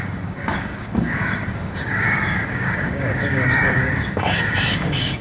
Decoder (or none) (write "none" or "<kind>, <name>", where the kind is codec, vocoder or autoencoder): codec, DAC